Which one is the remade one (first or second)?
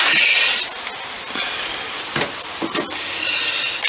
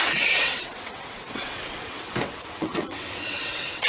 second